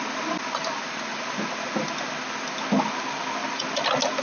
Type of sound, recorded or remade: recorded